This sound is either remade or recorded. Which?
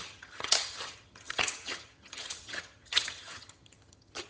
remade